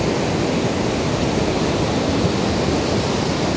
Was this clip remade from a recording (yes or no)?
no